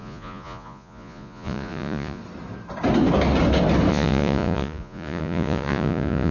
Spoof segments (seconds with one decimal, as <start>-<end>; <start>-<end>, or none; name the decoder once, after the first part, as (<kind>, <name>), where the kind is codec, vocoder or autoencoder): 0.0-2.2 (vocoder, Vocos); 3.9-6.3